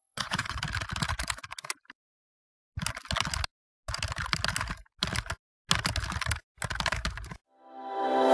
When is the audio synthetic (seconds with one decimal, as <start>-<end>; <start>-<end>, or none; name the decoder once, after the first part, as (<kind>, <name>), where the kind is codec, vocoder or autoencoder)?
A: 0.0-0.6 (vocoder, WaveNeXt)